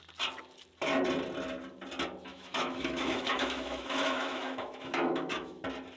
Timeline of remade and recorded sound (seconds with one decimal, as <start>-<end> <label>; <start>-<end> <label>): 0.0-2.3 recorded; 2.3-5.6 remade; 5.6-6.0 recorded